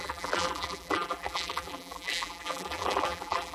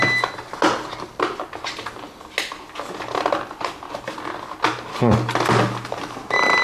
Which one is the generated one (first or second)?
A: first